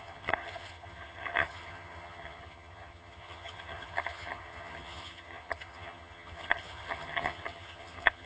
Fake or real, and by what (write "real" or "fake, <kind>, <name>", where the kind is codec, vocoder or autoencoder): fake, vocoder, HiFi-GAN